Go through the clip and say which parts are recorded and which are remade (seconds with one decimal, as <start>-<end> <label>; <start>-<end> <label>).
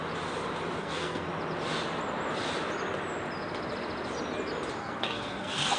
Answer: 0.0-0.8 recorded; 0.8-1.3 remade; 1.3-4.8 recorded; 4.8-5.8 remade